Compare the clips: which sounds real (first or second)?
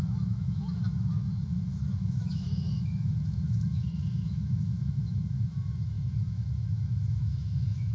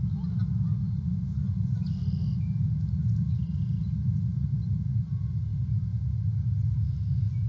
second